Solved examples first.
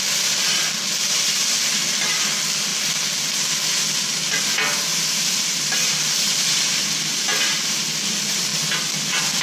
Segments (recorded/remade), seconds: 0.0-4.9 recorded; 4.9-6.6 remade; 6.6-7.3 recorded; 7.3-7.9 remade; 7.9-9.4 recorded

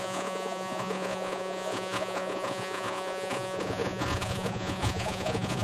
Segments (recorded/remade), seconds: 0.0-5.6 remade

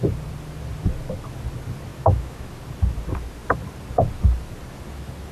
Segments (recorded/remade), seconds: 0.0-1.9 recorded; 1.9-2.5 remade; 2.5-5.3 recorded